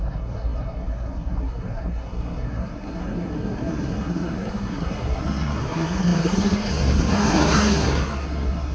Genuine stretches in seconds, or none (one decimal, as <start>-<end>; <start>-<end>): none